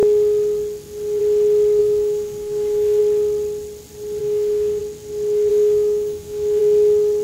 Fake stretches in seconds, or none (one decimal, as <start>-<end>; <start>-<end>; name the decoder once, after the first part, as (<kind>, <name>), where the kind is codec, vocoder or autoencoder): 1.8-3.0 (codec, DAC); 4.2-4.8; 5.5-6.6

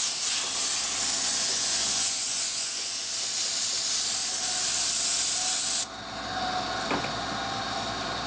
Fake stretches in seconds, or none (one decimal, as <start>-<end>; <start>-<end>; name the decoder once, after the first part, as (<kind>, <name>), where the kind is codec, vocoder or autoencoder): 1.3-3.1 (vocoder, Vocos)

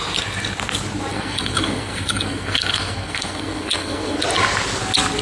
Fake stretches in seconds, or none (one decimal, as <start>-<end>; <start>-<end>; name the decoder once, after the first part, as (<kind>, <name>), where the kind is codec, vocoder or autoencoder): 1.1-4.2 (codec, SNAC)